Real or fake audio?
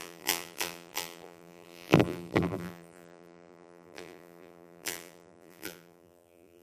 fake